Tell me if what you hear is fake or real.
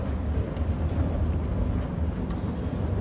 real